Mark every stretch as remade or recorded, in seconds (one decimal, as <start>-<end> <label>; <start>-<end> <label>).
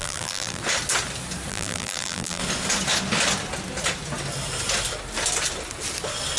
0.0-0.6 remade; 0.6-1.5 recorded; 1.5-2.4 remade; 2.4-6.4 recorded